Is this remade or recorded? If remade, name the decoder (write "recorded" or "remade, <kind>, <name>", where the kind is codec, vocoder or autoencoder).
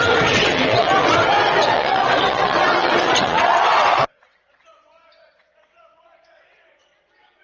remade, vocoder, WaveNeXt